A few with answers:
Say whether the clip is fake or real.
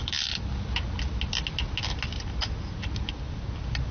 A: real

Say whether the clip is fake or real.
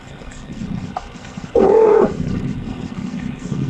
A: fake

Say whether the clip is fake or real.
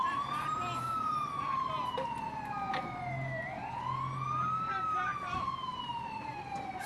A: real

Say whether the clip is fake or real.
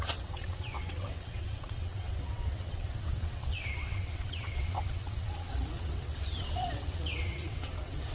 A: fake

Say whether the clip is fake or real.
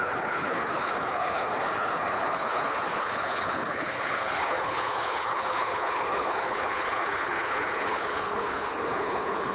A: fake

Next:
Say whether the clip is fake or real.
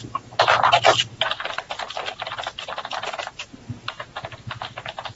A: real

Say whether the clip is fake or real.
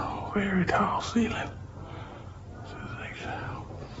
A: real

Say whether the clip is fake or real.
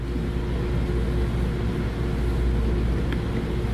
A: real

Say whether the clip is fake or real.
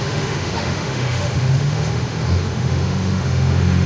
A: fake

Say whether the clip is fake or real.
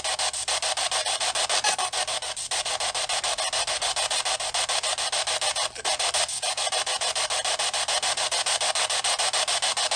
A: real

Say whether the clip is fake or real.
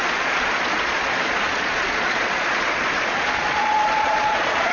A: fake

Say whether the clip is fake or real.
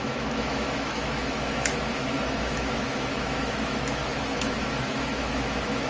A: fake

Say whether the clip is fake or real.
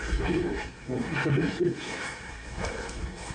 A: fake